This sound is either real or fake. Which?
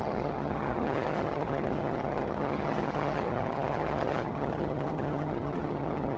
fake